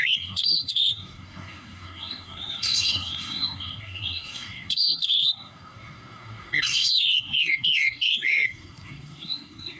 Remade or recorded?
remade